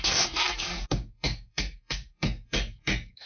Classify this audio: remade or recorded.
remade